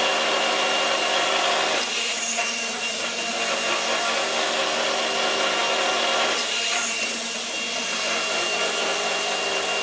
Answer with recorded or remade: recorded